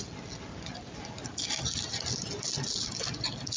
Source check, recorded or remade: recorded